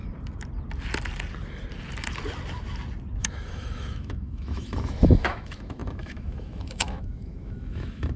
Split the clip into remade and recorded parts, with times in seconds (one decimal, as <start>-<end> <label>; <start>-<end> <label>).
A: 0.0-3.2 recorded; 3.2-8.2 remade